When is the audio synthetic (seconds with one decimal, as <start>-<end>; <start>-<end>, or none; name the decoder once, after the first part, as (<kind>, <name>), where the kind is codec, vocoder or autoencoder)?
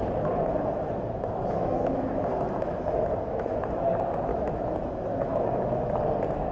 0.0-3.9 (autoencoder, DAC-VAE); 4.3-5.9